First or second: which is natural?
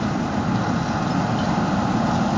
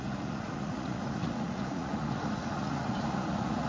first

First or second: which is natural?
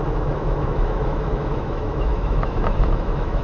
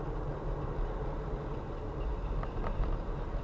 second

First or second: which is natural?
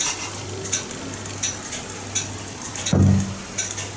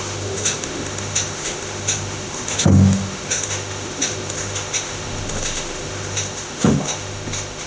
first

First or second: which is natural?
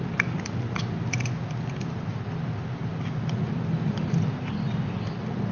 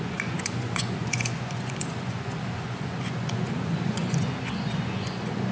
first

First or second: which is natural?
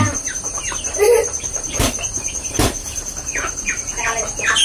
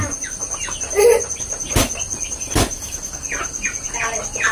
second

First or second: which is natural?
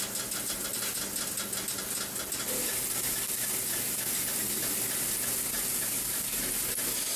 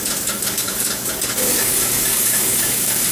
first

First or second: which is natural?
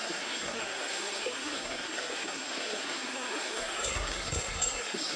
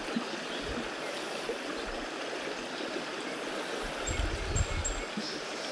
second